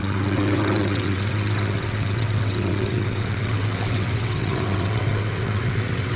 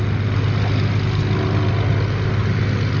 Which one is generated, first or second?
first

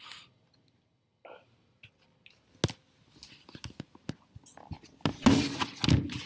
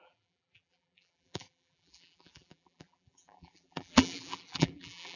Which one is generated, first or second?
second